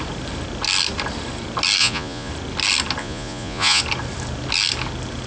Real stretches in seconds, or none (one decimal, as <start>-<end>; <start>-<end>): 0.0-1.8; 2.3-3.0; 3.8-5.3